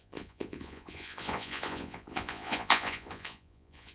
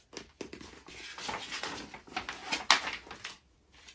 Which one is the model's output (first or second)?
first